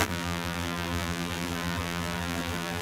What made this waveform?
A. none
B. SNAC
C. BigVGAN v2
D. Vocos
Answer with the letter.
C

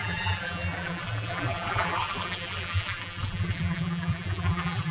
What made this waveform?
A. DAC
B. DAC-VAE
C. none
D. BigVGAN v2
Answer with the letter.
D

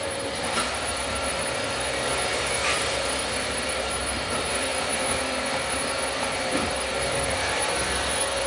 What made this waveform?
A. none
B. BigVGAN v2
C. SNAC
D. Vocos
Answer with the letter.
B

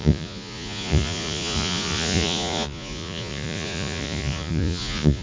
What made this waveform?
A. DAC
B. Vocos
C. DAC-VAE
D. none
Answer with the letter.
B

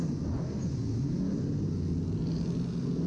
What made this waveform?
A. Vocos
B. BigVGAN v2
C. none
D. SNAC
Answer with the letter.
C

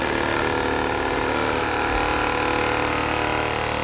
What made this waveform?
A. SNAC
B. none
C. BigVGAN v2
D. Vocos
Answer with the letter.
B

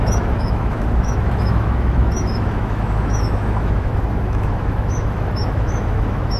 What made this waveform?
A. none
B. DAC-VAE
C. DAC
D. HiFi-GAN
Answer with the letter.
B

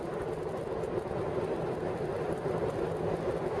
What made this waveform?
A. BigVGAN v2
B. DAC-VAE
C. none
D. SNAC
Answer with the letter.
C